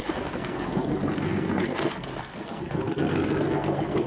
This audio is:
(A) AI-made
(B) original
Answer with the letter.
A